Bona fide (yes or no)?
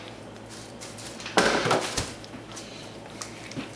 no